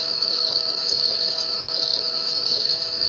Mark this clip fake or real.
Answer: fake